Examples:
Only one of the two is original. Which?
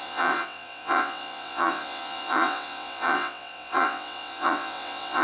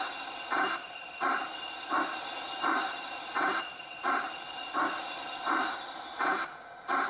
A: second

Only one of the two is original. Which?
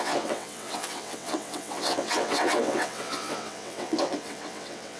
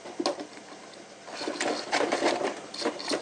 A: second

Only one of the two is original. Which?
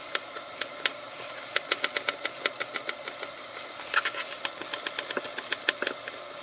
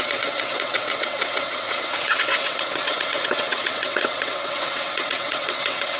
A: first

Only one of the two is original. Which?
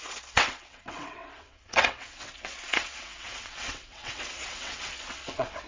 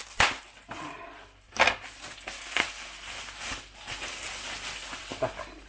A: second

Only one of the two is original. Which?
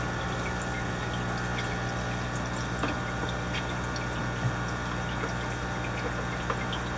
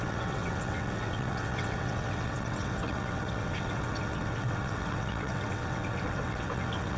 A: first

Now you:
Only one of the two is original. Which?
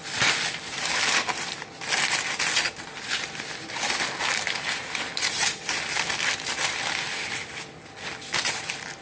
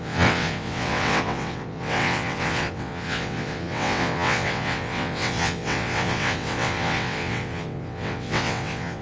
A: first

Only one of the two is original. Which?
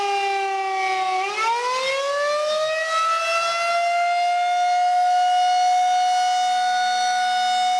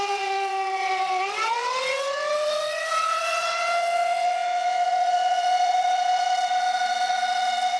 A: first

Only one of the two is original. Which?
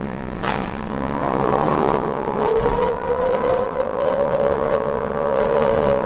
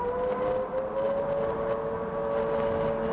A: second